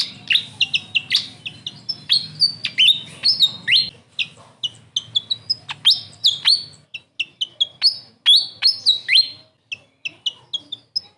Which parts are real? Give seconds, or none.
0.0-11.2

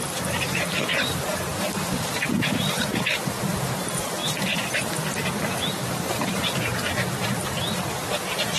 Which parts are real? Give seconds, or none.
0.0-1.5; 2.3-4.2; 6.2-6.7; 8.2-8.6

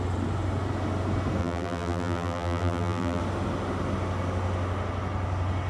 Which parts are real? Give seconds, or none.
0.0-1.4; 3.2-5.7

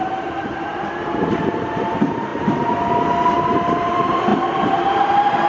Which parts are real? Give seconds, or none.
2.3-3.8